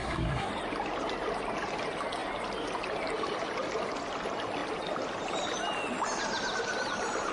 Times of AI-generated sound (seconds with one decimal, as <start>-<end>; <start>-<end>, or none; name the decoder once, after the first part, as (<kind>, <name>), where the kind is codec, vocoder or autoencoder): 0.0-0.5 (codec, SNAC)